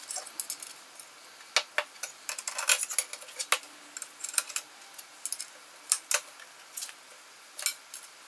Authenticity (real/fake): real